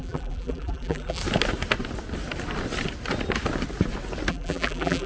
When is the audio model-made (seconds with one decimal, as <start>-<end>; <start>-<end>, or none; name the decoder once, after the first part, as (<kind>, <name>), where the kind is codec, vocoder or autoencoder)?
0.0-1.2 (vocoder, BigVGAN v2); 4.3-5.1